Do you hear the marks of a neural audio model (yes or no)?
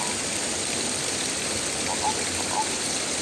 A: no